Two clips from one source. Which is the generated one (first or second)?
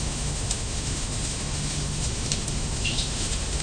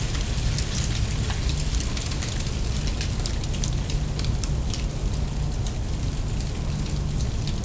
first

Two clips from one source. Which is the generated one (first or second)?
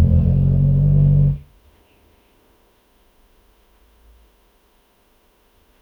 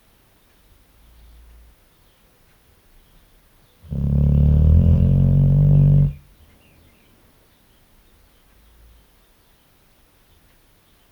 first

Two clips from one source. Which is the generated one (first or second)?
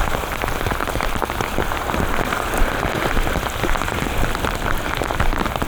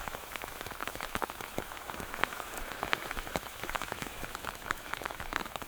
second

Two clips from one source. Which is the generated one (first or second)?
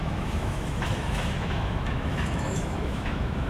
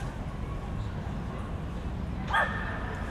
first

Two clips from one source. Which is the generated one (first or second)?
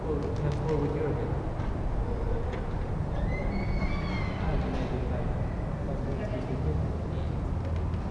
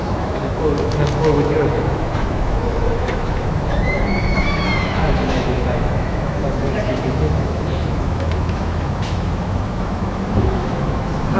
second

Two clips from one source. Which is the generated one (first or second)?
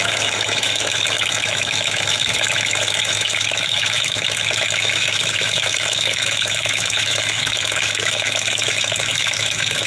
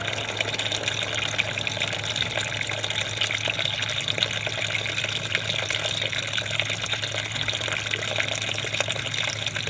first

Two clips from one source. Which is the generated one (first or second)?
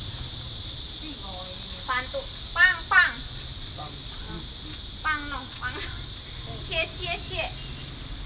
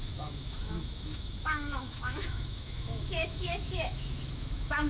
second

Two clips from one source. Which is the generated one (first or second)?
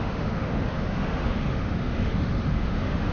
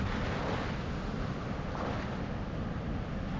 first